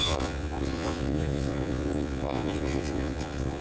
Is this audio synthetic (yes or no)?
yes